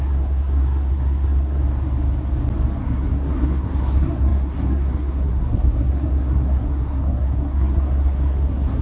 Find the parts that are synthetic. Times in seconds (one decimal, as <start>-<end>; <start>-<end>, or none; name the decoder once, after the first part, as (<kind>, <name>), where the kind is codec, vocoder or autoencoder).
0.0-1.6 (codec, SNAC); 2.8-8.8

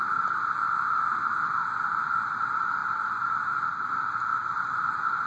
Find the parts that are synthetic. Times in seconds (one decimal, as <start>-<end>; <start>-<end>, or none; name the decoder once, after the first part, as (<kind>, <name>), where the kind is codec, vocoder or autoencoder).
none